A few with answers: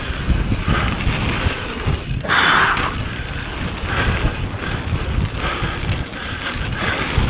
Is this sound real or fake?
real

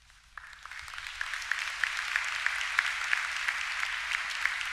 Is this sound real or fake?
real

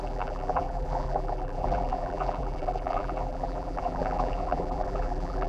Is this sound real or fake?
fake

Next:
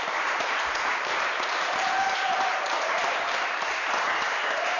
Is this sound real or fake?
fake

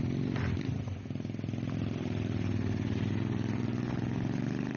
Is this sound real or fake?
real